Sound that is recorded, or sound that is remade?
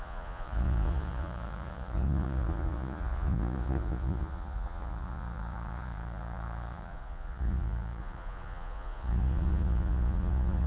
remade